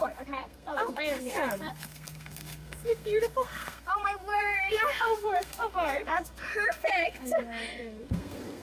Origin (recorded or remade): remade